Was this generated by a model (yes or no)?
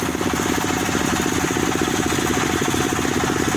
no